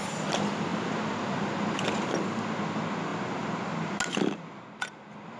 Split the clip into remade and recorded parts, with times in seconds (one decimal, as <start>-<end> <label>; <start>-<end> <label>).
0.0-5.4 recorded